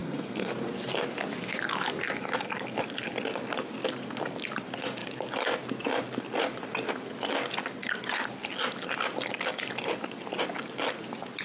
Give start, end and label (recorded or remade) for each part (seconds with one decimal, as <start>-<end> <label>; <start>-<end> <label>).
0.0-0.5 remade; 0.5-11.4 recorded